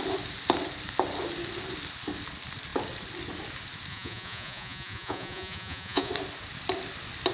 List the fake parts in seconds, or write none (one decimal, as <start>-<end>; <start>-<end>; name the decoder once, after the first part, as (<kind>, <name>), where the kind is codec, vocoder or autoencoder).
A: 3.9-6.1 (vocoder, Vocos)